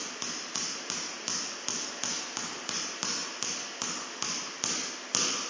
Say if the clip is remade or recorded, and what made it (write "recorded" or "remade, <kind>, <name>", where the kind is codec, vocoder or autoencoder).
recorded